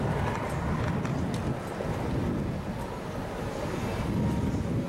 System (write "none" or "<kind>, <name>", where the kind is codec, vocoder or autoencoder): none